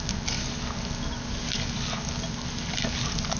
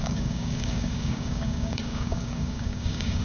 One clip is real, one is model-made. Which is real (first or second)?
first